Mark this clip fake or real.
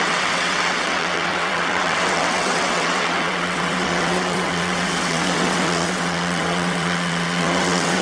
fake